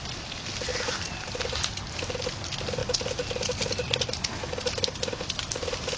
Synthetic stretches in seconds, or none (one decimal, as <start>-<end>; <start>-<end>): none